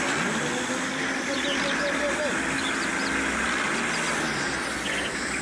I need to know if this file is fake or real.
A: real